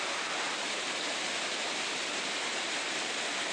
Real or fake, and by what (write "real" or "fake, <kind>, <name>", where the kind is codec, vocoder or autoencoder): fake, vocoder, BigVGAN v2